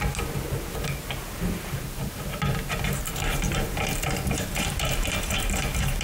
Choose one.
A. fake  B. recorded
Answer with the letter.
B